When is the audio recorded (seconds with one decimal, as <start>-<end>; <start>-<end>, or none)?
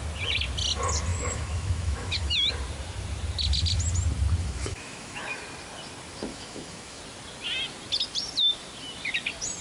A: 0.0-1.1; 2.5-4.4; 5.4-6.3; 7.0-9.6